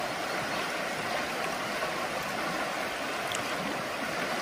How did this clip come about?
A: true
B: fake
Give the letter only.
A